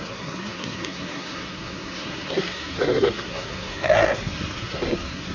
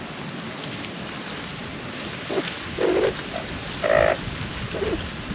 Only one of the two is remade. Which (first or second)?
first